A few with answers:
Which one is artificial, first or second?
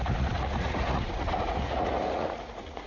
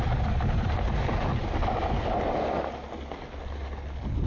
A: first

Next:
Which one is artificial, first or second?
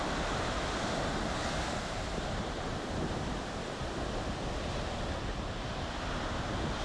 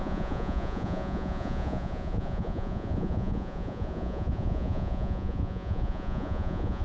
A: second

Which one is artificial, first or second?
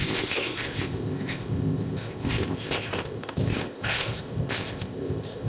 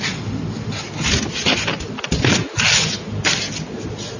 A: first